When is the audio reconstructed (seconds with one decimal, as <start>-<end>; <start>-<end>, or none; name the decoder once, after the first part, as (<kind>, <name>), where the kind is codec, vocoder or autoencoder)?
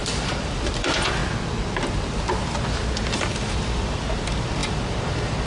0.0-1.2 (vocoder, BigVGAN v2); 2.9-5.5